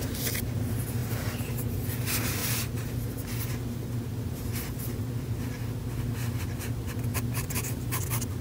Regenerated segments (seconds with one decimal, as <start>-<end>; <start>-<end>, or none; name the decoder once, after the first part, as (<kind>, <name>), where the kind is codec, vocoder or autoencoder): 7.1-8.0 (vocoder, BigVGAN v2)